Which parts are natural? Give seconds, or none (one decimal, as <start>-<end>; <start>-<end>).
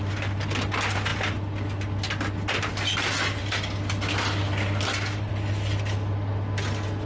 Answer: 0.0-7.1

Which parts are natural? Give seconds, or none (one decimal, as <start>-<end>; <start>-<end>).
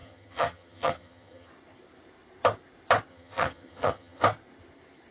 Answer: 1.5-3.1; 4.2-5.1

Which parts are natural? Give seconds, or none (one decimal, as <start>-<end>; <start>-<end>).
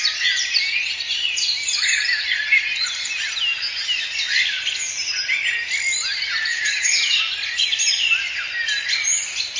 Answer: 0.0-6.5; 7.2-9.6